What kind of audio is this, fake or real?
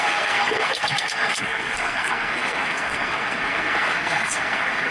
fake